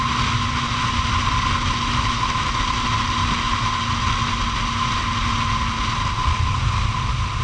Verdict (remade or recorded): recorded